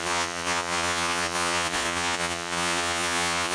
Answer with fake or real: fake